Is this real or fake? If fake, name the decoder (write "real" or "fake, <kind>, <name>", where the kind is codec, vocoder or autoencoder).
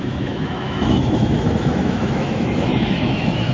fake, autoencoder, DAC-VAE